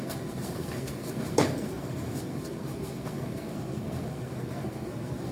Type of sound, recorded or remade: remade